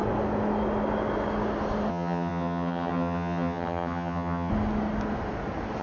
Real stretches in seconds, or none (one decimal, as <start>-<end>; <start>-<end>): 0.0-1.9; 4.5-5.8